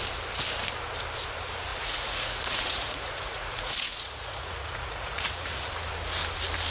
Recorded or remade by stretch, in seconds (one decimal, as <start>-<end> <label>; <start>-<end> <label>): 0.0-1.7 recorded; 1.7-5.7 remade; 5.7-6.7 recorded